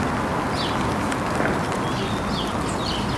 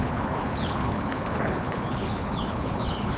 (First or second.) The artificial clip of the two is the second